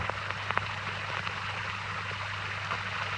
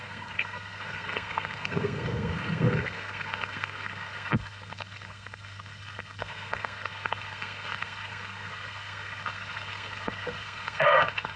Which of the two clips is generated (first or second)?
second